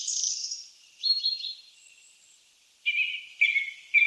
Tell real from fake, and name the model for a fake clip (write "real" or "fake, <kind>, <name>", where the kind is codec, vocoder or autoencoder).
real